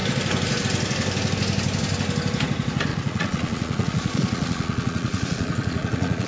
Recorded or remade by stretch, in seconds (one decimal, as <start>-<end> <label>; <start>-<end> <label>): 0.0-2.9 recorded; 2.9-6.3 remade